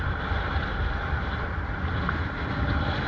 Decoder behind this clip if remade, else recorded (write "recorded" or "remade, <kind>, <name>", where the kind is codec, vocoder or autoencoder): remade, vocoder, BigVGAN v2